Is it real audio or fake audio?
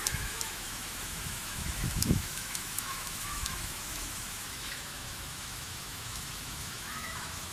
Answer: fake